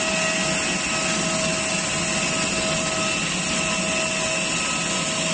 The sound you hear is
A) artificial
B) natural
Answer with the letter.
B